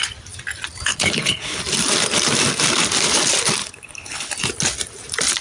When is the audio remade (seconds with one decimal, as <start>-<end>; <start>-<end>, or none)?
0.9-1.6; 3.6-4.3